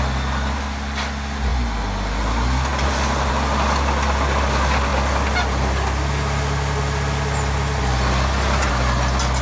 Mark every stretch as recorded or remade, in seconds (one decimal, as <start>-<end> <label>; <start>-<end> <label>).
0.0-9.4 recorded